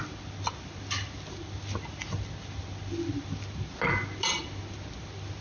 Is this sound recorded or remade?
recorded